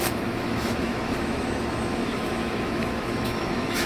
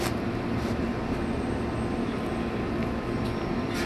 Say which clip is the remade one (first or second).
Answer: first